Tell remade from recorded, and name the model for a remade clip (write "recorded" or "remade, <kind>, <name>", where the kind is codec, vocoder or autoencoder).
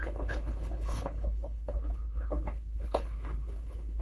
remade, codec, HILCodec